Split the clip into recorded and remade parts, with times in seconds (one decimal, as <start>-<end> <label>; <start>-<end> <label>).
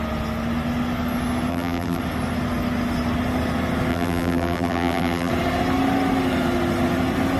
0.0-1.5 recorded; 1.5-2.0 remade; 2.0-3.9 recorded; 3.9-5.3 remade; 5.3-7.4 recorded